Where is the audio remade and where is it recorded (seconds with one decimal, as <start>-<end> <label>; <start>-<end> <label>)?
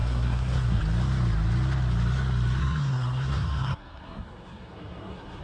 0.0-0.8 remade; 0.8-2.6 recorded; 2.6-5.4 remade